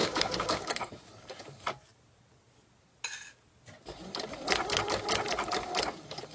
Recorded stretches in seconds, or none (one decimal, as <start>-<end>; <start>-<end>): 0.7-6.3